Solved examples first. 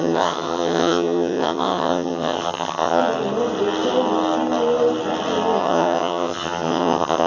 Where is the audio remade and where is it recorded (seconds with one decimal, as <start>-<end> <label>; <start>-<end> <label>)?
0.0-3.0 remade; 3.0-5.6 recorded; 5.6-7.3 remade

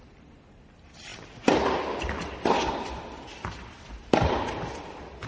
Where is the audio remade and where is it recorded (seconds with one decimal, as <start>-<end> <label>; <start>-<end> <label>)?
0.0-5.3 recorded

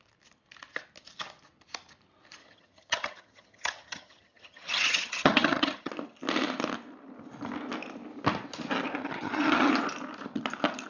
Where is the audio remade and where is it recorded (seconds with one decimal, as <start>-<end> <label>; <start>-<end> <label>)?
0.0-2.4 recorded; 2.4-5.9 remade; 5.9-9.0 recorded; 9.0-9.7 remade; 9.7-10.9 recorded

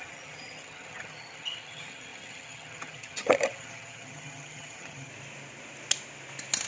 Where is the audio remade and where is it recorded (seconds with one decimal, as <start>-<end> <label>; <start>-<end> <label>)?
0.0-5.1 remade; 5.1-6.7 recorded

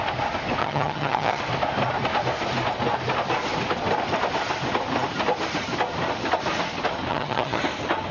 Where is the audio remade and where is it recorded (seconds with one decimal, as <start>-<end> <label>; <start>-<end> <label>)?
0.0-0.6 recorded; 0.6-1.4 remade; 1.4-7.1 recorded; 7.1-7.6 remade; 7.6-8.1 recorded

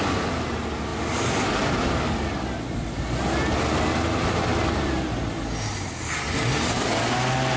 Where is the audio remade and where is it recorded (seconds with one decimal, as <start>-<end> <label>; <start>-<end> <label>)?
0.0-7.6 recorded

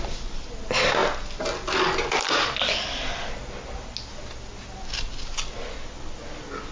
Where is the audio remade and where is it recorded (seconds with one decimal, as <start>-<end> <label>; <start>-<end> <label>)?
0.0-6.7 recorded

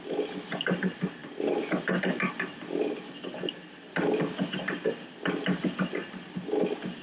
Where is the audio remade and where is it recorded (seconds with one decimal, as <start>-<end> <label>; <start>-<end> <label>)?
0.0-7.0 recorded